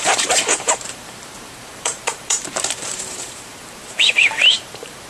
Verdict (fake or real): fake